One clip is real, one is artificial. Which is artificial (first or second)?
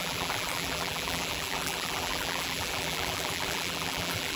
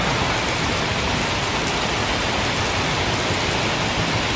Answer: first